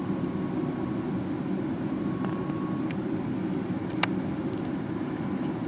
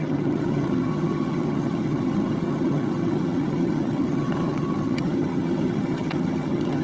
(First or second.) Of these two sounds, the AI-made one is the second